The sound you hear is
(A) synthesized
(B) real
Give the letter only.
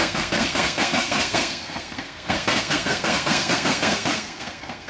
A